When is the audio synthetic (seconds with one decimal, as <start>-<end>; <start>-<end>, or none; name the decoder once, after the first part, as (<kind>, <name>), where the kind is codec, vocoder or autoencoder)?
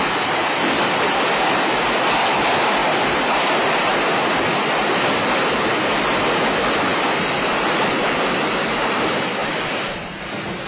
6.9-8.8 (vocoder, BigVGAN v2); 9.4-10.1